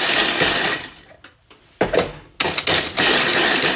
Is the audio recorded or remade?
recorded